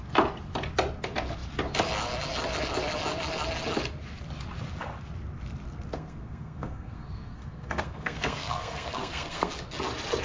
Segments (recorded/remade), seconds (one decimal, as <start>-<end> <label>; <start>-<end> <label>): 0.0-5.9 recorded; 5.9-9.5 remade; 9.5-10.2 recorded